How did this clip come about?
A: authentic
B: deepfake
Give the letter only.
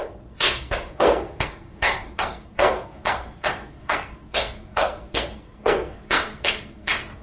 B